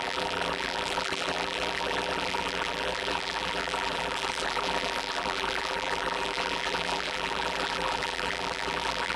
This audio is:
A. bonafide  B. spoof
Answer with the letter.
B